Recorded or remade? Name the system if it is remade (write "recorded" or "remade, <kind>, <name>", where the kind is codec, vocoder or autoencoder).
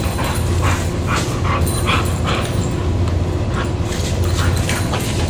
recorded